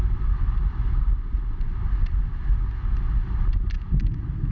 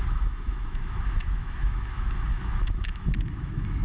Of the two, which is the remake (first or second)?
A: second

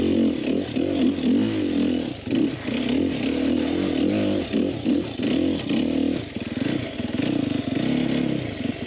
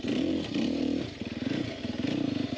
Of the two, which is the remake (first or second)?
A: second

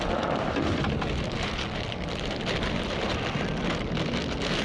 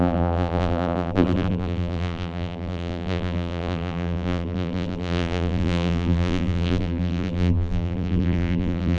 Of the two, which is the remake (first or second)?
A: second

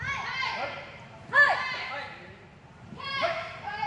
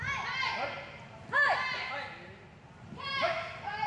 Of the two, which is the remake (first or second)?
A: first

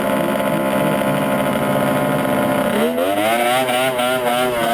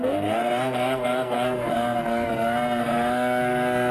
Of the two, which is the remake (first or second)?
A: second